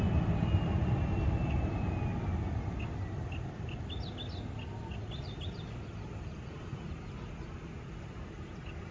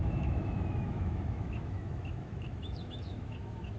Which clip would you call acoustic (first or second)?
first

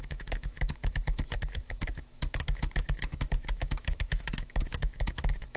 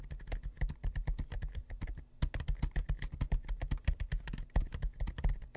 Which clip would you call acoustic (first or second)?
second